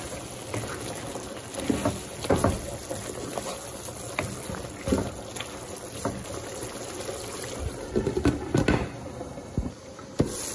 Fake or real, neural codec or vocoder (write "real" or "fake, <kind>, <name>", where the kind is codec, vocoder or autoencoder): real